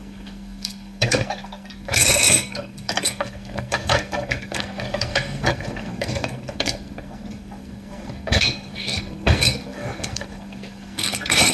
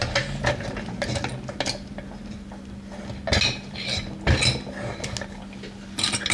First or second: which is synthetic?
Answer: first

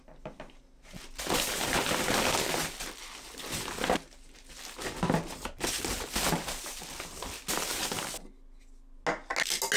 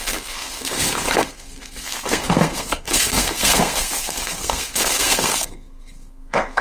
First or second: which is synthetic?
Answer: second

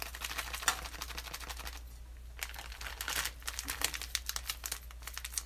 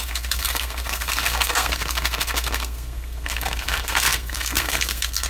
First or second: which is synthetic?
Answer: second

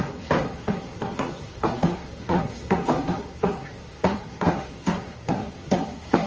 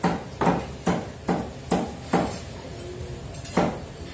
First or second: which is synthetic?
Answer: first